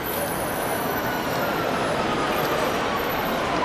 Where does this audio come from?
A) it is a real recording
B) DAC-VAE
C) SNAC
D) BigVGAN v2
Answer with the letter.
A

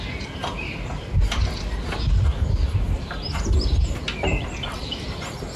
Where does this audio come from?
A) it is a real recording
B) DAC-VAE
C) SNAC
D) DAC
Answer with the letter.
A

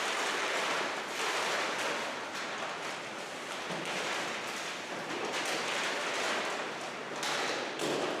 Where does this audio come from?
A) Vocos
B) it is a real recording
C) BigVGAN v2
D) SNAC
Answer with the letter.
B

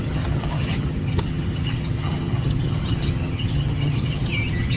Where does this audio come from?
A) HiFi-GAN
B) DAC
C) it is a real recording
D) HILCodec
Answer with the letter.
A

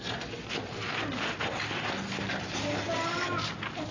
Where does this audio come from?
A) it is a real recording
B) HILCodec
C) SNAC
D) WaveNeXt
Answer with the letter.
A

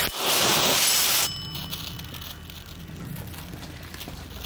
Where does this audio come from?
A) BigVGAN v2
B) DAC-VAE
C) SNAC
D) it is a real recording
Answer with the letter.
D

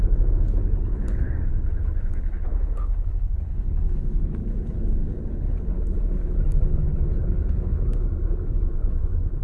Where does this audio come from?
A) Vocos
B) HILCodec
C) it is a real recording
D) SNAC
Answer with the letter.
B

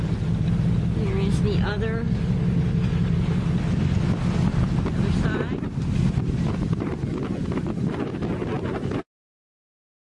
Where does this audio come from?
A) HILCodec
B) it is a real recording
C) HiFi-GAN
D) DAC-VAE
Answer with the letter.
B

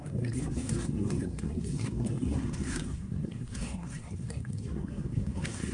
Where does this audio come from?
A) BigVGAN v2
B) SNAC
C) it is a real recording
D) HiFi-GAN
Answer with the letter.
B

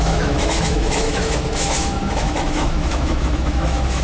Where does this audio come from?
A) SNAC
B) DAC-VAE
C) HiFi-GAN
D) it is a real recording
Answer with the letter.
B